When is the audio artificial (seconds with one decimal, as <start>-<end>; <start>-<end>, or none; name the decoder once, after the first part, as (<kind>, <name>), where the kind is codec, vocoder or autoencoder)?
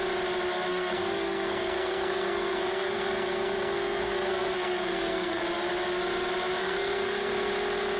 0.7-5.4 (codec, SNAC); 6.6-7.5